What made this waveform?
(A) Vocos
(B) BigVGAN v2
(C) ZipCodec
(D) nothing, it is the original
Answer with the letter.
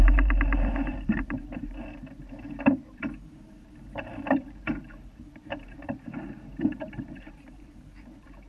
B